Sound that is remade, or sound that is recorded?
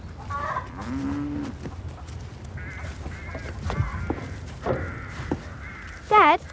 recorded